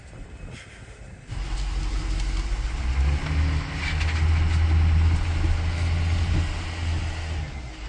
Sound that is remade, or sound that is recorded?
recorded